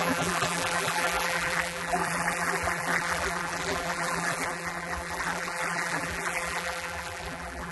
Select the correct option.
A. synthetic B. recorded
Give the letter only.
A